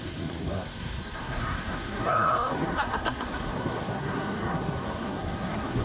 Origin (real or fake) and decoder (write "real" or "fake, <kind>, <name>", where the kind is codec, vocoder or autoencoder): fake, codec, SNAC